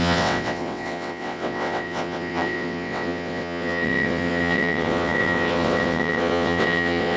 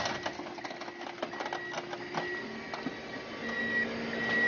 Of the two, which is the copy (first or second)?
first